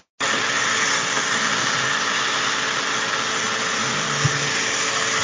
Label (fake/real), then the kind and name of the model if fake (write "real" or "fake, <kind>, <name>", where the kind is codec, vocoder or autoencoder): real